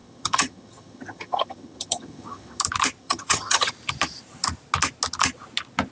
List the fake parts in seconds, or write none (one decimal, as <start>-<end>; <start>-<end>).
0.0-2.6; 3.0-3.7